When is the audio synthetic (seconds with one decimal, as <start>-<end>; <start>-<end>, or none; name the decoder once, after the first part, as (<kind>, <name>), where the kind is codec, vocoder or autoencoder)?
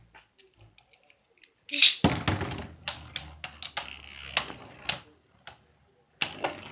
none